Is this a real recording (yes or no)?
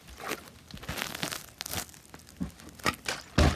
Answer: yes